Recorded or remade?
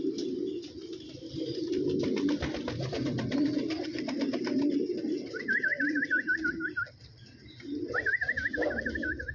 remade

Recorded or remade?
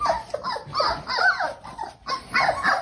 recorded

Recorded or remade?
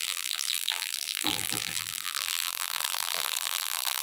remade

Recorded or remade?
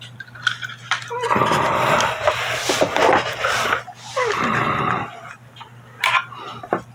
remade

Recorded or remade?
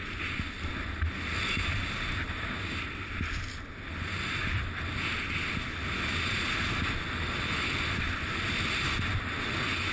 recorded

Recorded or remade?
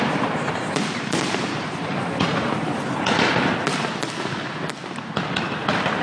remade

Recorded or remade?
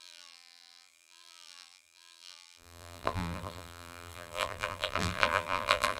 remade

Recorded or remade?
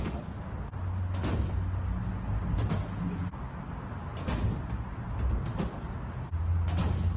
recorded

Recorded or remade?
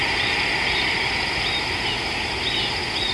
recorded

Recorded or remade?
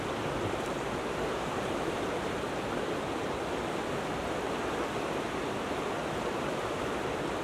remade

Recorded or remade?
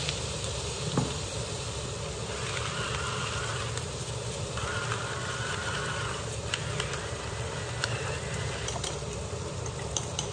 remade